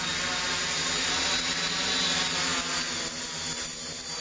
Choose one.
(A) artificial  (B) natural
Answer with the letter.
B